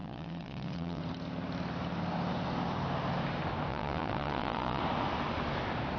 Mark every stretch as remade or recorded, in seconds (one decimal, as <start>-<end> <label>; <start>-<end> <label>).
0.0-1.0 remade; 1.0-3.7 recorded; 3.7-4.8 remade; 4.8-6.0 recorded